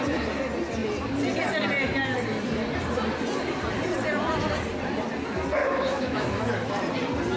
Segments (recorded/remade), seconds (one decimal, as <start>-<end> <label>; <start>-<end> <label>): 0.0-5.6 recorded; 5.6-6.7 remade; 6.7-7.4 recorded